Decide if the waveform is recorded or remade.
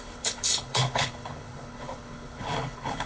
remade